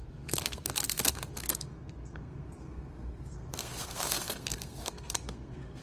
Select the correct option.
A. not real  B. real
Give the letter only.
A